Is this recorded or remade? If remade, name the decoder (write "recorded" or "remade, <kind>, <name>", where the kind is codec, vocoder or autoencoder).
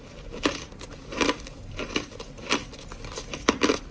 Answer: remade, vocoder, BigVGAN v2